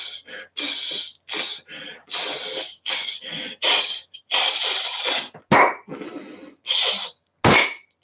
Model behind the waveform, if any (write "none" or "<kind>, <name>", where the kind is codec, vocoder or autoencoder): none